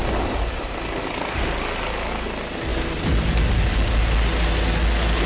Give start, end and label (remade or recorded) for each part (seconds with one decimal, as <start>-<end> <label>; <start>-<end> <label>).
0.0-5.3 recorded